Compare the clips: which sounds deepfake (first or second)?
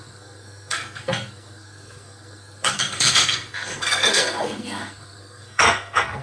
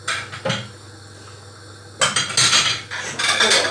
first